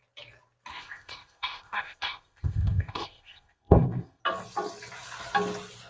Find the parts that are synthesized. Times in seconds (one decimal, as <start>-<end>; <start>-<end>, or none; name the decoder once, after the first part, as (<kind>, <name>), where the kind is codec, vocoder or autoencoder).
0.7-4.2 (codec, ZipCodec)